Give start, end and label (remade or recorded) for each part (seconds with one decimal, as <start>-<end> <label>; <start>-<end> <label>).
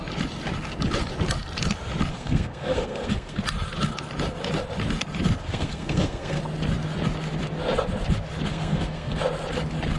0.0-2.1 recorded; 2.1-3.4 remade; 3.4-5.4 recorded; 5.4-6.4 remade; 6.4-8.5 recorded; 8.5-9.2 remade; 9.2-10.0 recorded